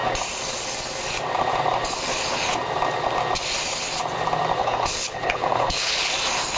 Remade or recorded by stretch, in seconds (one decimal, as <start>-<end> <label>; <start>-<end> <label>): 0.0-4.6 recorded; 4.6-6.1 remade; 6.1-6.6 recorded